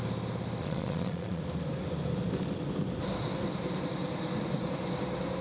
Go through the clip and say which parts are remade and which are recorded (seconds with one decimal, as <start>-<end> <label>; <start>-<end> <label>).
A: 0.0-0.6 recorded; 0.6-1.4 remade; 1.4-5.4 recorded